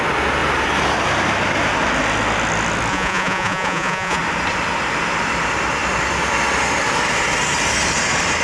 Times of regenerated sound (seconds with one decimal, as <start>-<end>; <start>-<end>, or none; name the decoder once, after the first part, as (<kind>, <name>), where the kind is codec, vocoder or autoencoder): 2.9-4.2 (vocoder, Vocos)

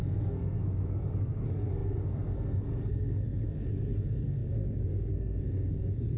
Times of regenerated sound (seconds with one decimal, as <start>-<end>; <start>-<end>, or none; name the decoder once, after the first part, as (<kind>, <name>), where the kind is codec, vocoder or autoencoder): 0.0-6.2 (codec, SNAC)

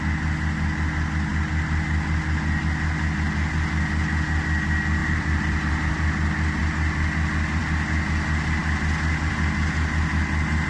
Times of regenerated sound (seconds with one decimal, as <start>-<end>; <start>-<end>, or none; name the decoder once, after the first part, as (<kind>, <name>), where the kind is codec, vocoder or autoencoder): 5.0-5.9 (vocoder, BigVGAN v2)

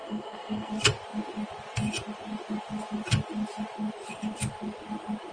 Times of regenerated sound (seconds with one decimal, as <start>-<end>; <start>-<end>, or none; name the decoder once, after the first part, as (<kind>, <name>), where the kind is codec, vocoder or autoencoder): 0.0-0.7 (codec, SNAC)

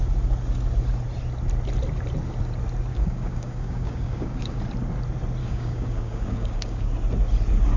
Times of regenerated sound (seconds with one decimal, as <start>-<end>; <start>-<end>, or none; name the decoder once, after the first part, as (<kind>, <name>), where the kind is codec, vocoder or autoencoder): 2.9-4.6 (codec, DAC); 5.4-6.9